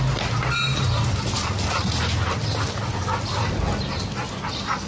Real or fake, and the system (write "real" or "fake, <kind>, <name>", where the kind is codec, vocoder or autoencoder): real